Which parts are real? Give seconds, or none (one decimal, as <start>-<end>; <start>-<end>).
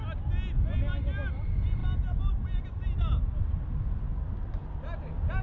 0.0-5.4